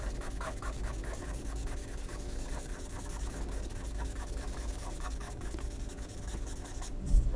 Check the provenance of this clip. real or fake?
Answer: fake